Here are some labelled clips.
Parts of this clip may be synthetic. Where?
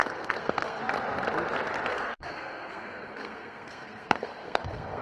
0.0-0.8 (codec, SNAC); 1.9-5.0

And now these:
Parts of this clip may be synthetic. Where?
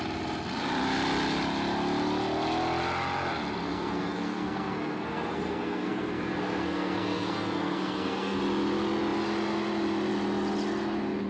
3.6-8.4 (codec, SNAC)